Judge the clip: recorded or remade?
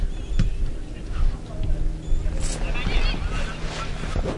recorded